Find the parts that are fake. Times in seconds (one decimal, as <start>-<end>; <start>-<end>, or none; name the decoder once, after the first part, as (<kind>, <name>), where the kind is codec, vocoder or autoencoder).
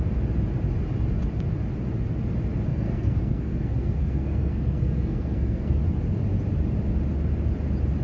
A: 2.7-5.8 (codec, SNAC)